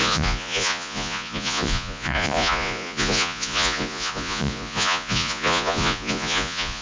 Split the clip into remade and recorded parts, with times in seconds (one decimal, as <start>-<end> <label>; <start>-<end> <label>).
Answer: 0.0-6.8 remade